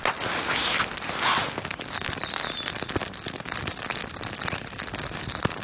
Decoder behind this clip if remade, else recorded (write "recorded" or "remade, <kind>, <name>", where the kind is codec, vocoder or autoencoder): recorded